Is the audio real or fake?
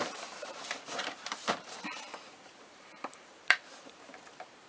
fake